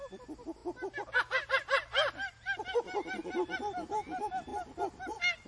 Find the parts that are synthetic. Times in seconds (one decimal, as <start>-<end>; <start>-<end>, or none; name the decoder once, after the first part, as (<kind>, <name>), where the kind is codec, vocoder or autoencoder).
none